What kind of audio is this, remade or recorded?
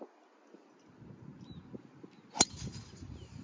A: recorded